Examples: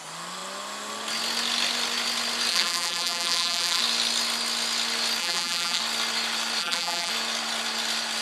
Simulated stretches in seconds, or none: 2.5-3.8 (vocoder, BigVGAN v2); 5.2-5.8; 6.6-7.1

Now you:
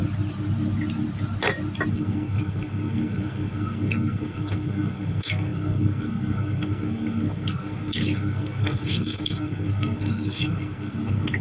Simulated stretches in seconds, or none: 1.9-11.4 (codec, SNAC)

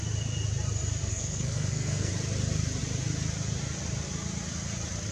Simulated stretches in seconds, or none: 1.1-2.1 (codec, SNAC)

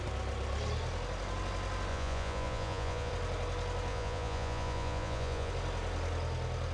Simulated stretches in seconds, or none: 1.9-3.1 (vocoder, Vocos); 3.9-5.5